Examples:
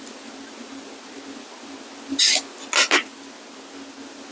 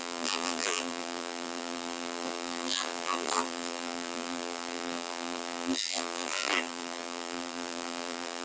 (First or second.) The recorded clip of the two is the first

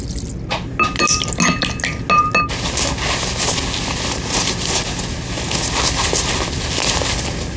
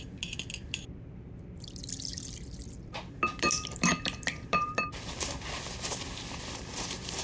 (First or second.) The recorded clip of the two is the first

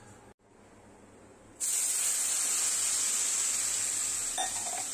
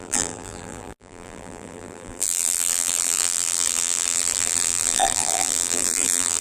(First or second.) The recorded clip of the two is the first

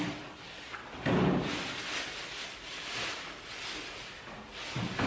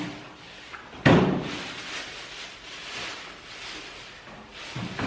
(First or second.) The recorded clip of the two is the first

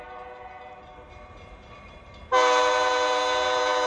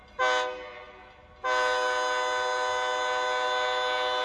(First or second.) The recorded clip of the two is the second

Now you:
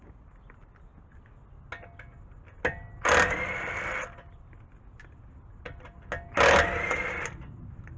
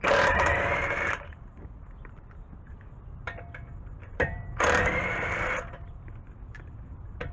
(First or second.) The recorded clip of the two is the first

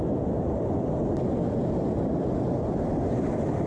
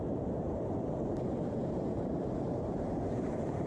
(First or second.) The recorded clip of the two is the first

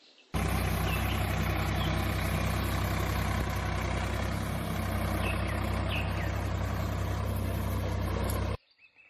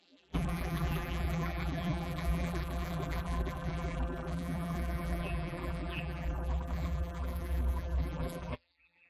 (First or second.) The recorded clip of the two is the first